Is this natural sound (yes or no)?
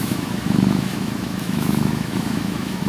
no